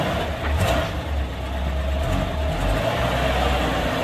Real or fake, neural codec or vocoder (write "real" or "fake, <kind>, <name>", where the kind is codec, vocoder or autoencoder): real